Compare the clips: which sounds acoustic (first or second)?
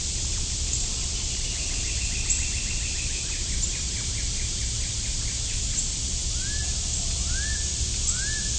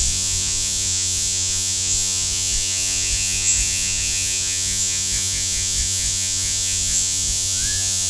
first